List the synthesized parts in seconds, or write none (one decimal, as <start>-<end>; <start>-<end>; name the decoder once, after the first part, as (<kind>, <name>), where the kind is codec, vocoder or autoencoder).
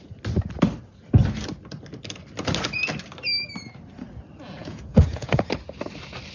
4.6-5.5 (vocoder, Vocos)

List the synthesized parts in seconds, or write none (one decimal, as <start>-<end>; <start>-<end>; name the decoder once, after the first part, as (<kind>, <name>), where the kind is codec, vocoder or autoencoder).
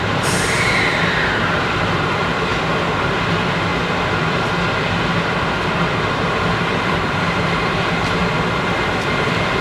0.0-2.5 (vocoder, BigVGAN v2); 3.0-3.7; 5.6-8.2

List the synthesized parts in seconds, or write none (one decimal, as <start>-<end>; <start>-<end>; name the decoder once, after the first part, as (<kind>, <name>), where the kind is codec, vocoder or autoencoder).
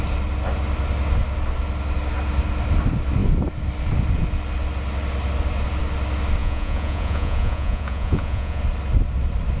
6.4-8.6 (vocoder, Vocos)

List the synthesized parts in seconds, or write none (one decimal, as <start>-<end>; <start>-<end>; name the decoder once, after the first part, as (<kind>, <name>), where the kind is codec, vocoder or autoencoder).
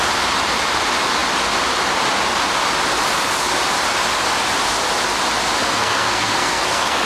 5.6-7.1 (codec, SNAC)